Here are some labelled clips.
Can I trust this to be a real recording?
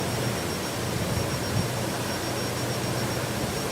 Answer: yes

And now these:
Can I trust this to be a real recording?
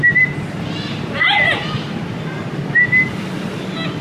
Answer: yes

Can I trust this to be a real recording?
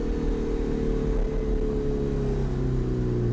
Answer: yes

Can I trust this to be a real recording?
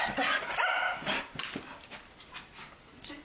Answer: yes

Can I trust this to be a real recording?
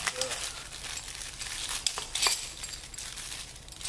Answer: yes